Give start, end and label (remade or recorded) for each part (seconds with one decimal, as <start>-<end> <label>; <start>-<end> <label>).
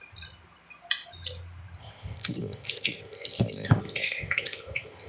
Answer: 0.0-1.8 recorded; 1.8-5.1 remade